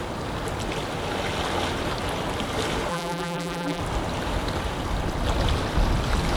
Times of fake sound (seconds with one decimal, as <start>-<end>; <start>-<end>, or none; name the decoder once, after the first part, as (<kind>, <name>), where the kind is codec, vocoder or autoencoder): 2.9-3.8 (vocoder, BigVGAN v2)